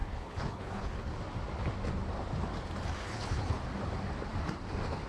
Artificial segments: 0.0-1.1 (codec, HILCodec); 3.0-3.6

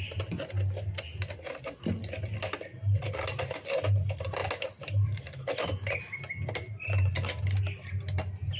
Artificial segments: none

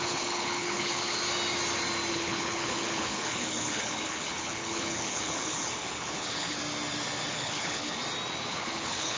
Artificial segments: 0.0-1.2 (codec, HILCodec); 2.1-6.6; 7.3-8.0; 8.5-9.2

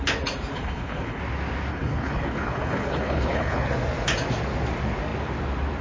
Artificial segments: 0.5-1.2 (codec, HILCodec); 1.7-3.7

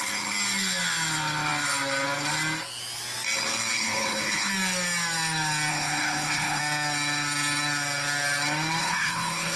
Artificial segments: 3.7-4.5 (codec, HILCodec); 5.7-6.6; 8.8-9.6